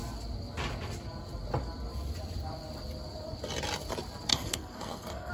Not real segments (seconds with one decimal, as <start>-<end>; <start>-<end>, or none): 4.3-5.3